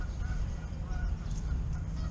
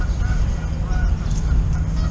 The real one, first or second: second